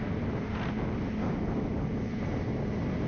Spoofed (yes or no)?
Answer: no